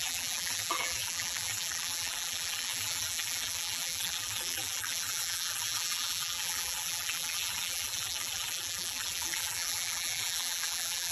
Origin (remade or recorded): remade